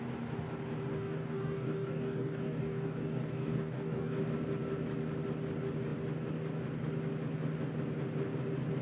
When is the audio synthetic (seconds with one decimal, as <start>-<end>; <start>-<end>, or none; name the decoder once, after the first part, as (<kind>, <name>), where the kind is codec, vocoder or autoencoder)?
0.9-4.2 (codec, DAC)

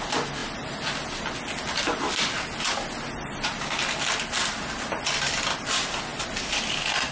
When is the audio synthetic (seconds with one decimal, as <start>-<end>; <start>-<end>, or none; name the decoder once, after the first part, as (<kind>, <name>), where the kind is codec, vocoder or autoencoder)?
none

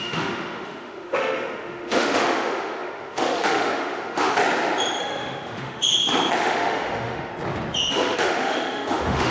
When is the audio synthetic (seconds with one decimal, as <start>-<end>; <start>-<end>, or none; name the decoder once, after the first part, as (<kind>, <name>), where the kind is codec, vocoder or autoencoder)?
0.0-4.4 (autoencoder, DAC-VAE); 5.0-5.8; 6.4-7.3; 7.9-9.3